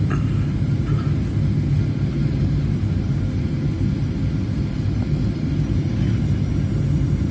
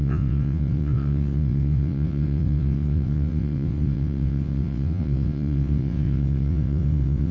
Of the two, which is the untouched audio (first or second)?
first